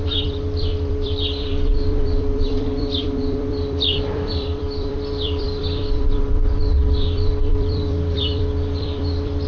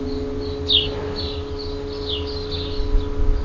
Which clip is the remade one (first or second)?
first